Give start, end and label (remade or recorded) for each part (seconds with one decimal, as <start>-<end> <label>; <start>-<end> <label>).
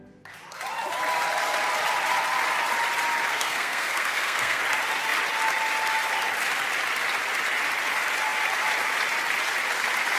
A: 0.0-3.3 recorded; 3.3-4.6 remade; 4.6-10.2 recorded